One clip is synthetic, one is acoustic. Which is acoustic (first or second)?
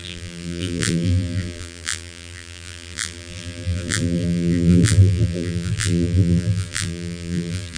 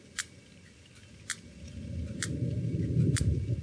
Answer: second